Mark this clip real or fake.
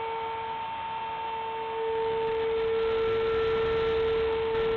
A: real